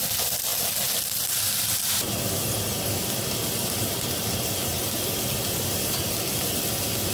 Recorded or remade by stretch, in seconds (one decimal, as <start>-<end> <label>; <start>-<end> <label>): 0.0-7.1 recorded